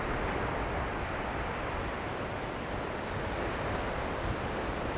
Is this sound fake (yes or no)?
no